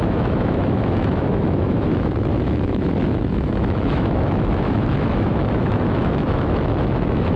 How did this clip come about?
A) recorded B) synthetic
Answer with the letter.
B